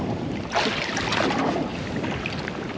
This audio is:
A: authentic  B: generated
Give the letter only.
A